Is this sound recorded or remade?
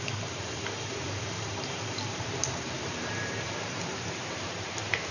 remade